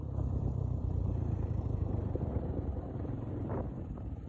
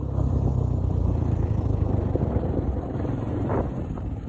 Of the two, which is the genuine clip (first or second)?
second